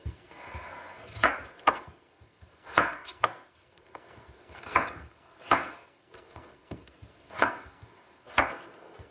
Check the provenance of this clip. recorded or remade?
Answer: remade